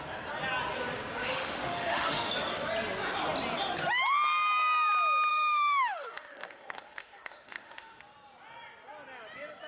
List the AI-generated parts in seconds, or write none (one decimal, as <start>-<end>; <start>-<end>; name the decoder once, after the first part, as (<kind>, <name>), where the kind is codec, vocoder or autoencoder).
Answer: 1.2-2.3 (autoencoder, DAC-VAE); 5.3-8.0